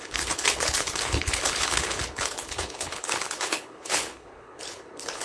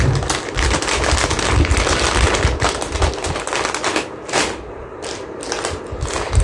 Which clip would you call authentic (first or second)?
second